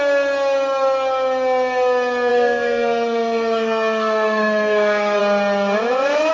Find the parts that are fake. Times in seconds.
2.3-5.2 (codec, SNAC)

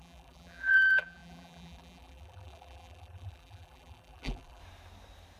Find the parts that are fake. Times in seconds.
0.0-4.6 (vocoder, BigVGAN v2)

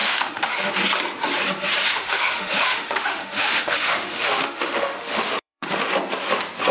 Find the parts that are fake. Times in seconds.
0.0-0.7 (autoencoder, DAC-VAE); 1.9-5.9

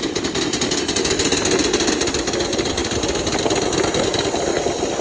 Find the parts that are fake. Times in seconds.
none

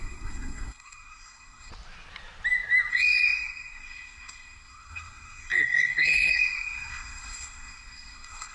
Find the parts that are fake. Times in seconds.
0.0-1.7 (codec, SNAC); 2.9-8.5

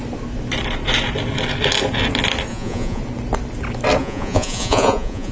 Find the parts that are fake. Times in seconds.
2.5-3.0 (vocoder, Vocos); 4.0-5.3